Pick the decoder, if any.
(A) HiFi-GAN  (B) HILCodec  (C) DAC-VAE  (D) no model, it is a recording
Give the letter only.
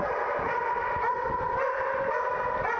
D